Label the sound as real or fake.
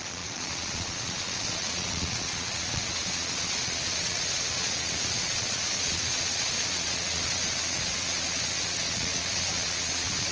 fake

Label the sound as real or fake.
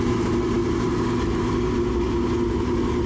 real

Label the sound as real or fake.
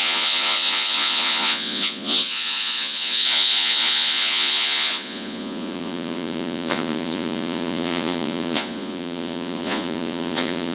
fake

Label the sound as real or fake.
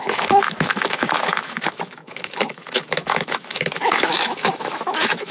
fake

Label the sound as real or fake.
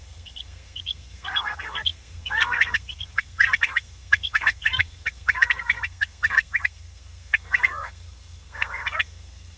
fake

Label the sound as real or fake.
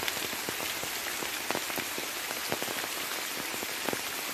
real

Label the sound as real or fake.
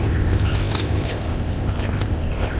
fake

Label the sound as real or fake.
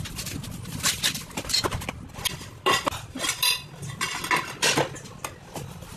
real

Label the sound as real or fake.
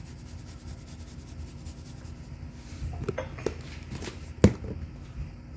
real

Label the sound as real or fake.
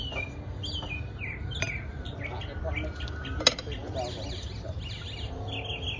real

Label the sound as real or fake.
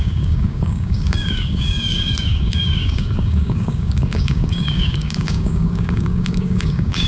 fake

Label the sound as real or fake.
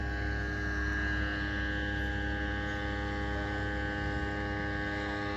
real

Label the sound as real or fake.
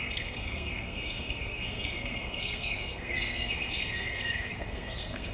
fake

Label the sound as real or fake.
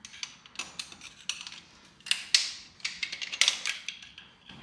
real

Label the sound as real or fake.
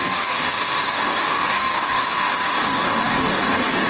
fake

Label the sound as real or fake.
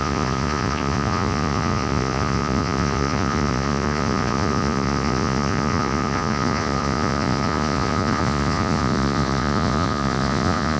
fake